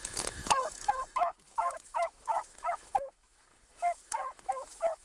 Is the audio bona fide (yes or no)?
no